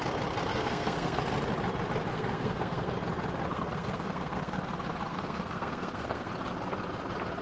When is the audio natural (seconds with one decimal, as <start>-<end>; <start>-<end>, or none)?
0.0-0.5; 1.2-2.1; 2.9-3.5; 4.6-5.1; 6.3-7.4